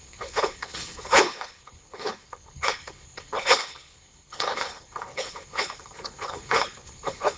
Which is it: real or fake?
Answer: fake